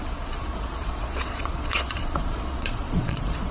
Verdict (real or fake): fake